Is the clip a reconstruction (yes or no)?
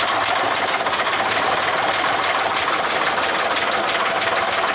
no